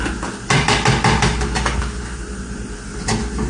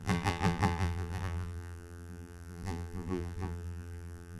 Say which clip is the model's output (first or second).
second